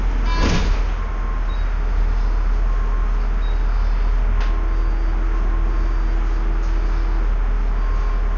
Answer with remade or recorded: recorded